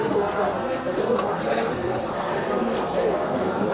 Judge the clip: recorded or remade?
remade